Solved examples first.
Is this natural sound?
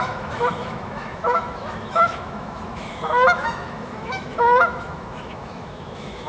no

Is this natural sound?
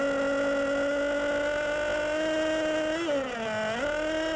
yes